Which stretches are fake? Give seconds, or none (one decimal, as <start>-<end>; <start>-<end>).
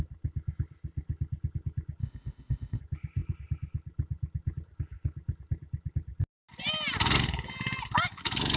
2.0-2.8